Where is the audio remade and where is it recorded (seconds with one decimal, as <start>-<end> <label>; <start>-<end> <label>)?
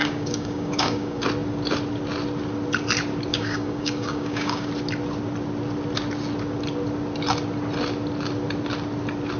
0.0-1.2 remade; 1.2-3.3 recorded; 3.3-4.7 remade; 4.7-9.4 recorded